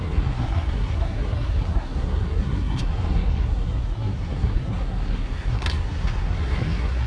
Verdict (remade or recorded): remade